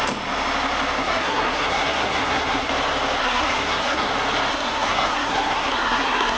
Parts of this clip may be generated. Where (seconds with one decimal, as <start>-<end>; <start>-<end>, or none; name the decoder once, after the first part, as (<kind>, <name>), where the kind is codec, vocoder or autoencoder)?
1.0-2.7 (codec, SNAC); 3.2-4.1; 4.5-6.4